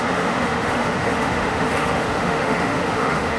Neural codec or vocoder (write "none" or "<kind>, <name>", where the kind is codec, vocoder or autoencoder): autoencoder, DAC-VAE